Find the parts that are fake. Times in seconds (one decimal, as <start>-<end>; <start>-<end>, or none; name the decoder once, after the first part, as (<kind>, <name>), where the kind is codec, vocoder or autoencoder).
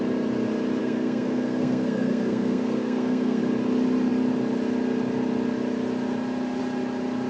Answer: 0.8-3.4 (codec, SNAC)